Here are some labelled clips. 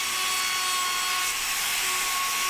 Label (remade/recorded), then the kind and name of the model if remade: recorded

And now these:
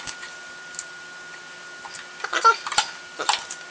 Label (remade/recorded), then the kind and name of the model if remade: recorded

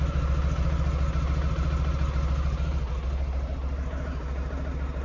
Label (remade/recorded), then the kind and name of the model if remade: recorded